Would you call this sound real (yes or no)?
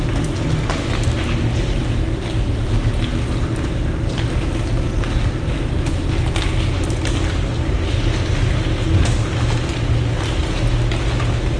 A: yes